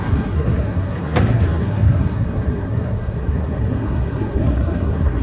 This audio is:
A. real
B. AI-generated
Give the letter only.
B